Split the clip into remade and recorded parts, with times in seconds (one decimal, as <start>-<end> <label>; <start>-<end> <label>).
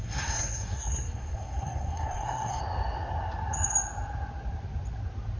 0.0-2.6 remade; 2.6-5.4 recorded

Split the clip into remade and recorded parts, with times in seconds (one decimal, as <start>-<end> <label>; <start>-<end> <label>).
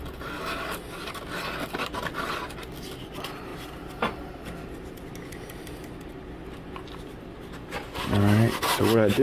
0.0-9.2 recorded